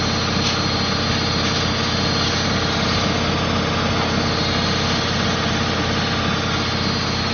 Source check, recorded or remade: recorded